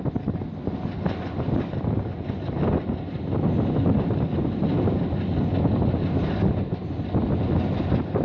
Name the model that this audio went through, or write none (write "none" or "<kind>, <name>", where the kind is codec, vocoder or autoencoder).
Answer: none